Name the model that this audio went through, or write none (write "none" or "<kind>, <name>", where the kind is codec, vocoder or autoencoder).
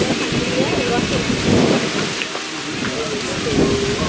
none